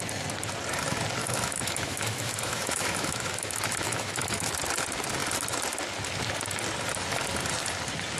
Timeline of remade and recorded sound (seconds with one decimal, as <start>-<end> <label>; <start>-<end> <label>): 0.0-1.2 recorded; 1.2-4.6 remade; 4.6-8.2 recorded